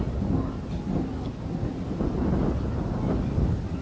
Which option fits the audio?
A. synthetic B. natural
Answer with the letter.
B